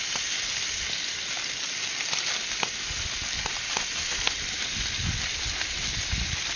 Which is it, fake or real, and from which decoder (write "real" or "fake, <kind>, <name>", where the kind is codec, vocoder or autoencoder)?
real